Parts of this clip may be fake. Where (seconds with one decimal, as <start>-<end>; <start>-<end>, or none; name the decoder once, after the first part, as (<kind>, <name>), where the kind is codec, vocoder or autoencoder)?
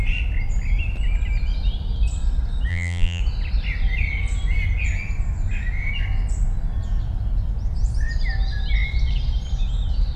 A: 2.7-3.2 (vocoder, BigVGAN v2)